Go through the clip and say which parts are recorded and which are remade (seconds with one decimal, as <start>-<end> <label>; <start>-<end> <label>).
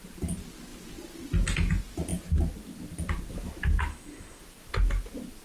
0.0-3.9 recorded; 3.9-4.4 remade; 4.4-5.4 recorded